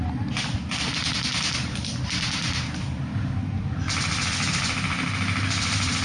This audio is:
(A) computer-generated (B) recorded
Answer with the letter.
B